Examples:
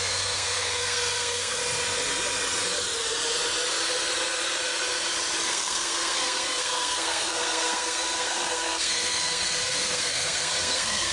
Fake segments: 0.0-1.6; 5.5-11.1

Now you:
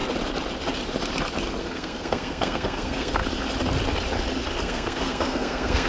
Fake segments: 1.6-3.2; 4.6-5.9

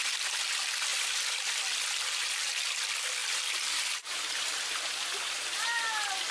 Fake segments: 0.9-1.5; 3.2-5.5

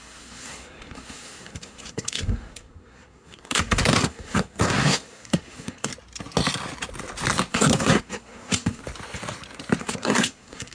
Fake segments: 0.0-5.9; 7.5-8.8; 9.8-10.7

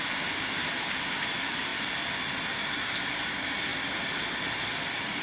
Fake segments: 0.0-1.7; 2.5-3.7

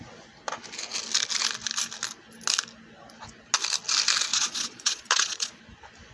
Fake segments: 4.3-5.6

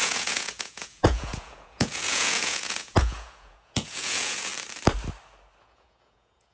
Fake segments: 0.0-4.5; 5.6-6.5